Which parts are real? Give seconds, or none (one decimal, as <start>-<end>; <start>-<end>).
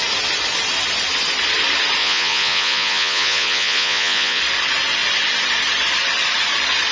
0.0-2.0; 4.4-6.9